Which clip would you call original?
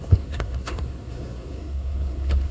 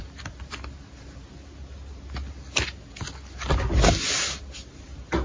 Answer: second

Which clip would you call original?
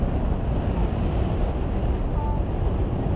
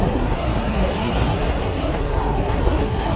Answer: first